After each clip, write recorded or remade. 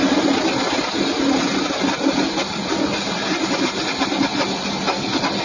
recorded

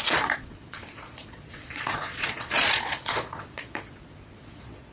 remade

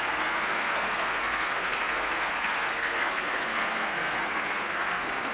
remade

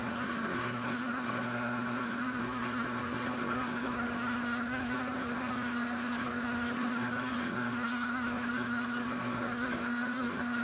remade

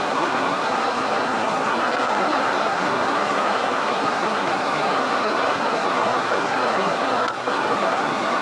remade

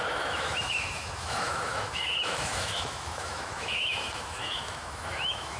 remade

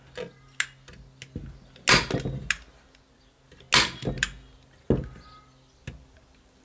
recorded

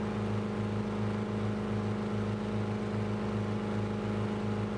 recorded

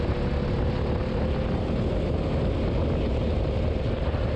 recorded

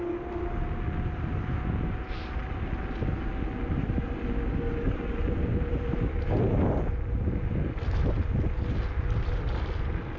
recorded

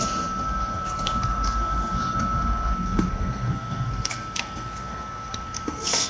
remade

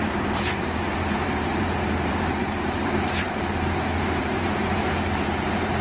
remade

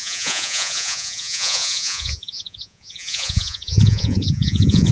remade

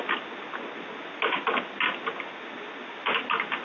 recorded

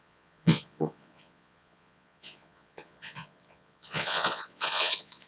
remade